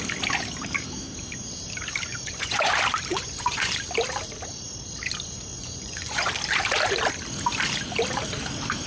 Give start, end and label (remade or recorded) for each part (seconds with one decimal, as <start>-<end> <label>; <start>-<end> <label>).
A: 0.0-2.1 recorded; 2.1-2.7 remade; 2.7-3.1 recorded; 3.1-3.7 remade; 3.7-5.5 recorded; 5.5-6.3 remade; 6.3-8.9 recorded